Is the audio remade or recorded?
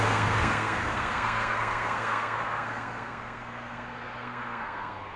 remade